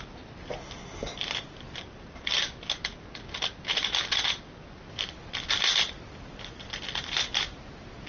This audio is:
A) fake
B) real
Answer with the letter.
B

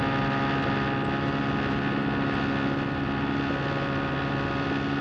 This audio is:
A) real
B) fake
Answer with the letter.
A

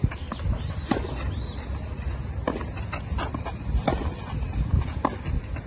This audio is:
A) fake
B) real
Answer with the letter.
B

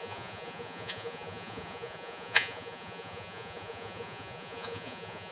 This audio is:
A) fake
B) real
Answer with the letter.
A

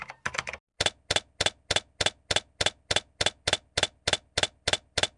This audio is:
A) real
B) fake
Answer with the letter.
A